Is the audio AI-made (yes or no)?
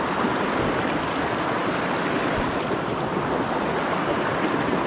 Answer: no